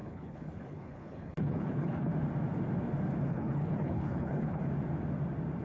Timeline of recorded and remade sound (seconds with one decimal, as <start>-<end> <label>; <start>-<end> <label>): 0.0-2.1 remade; 2.1-3.2 recorded; 3.2-4.6 remade; 4.6-5.6 recorded